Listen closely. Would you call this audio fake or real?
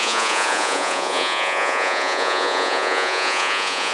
fake